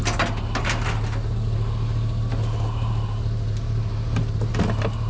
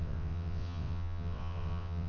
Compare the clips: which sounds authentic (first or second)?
first